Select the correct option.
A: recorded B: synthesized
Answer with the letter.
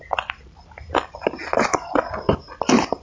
A